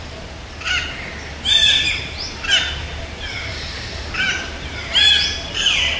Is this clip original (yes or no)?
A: yes